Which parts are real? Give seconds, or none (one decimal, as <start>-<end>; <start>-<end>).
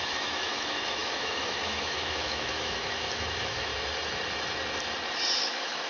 3.7-5.4